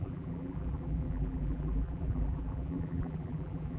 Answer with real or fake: fake